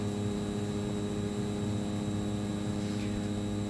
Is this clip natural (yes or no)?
no